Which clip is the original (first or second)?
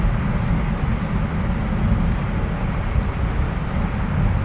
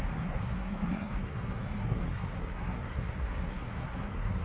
first